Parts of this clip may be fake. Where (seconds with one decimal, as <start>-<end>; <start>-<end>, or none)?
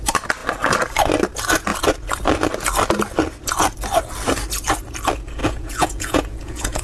5.4-6.8